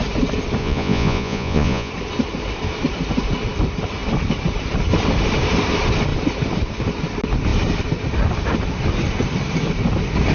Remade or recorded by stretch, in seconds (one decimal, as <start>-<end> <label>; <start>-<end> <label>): 0.0-0.6 recorded; 0.6-1.9 remade; 1.9-10.3 recorded

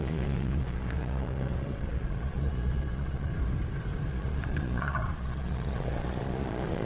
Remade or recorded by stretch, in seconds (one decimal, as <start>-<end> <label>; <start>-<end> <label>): 0.0-3.3 remade; 3.3-4.1 recorded; 4.1-6.8 remade